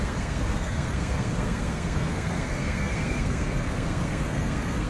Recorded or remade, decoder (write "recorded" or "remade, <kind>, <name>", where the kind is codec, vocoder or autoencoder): remade, codec, SNAC